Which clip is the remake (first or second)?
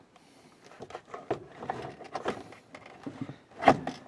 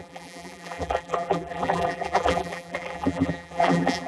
second